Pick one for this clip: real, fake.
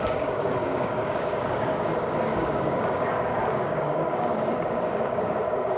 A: fake